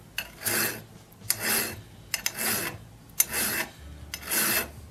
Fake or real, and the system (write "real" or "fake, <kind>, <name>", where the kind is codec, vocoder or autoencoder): real